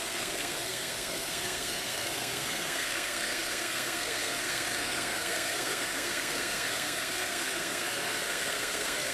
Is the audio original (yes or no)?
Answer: no